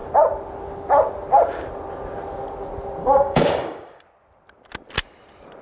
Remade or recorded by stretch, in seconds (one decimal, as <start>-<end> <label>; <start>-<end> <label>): 0.0-3.0 recorded; 3.0-4.0 remade; 4.0-5.6 recorded